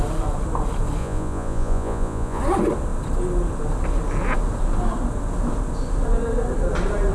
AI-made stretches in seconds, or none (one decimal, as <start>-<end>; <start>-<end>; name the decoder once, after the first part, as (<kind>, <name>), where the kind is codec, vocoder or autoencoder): 1.0-2.4 (vocoder, Vocos)